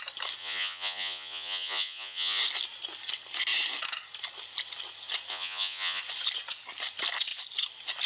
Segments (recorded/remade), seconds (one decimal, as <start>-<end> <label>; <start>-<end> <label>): 0.0-0.4 recorded; 0.4-2.4 remade; 2.4-5.3 recorded; 5.3-6.0 remade; 6.0-8.1 recorded